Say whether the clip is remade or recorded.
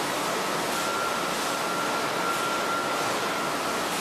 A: recorded